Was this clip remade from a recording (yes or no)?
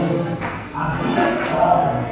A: yes